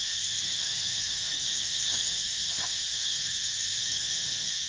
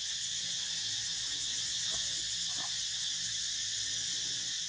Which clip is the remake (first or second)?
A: first